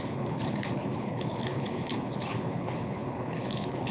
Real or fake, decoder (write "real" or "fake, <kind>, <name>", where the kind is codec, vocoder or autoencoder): fake, codec, HILCodec